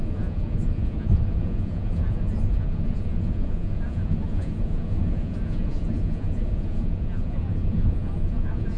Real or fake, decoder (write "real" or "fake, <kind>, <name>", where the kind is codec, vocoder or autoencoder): fake, vocoder, Vocos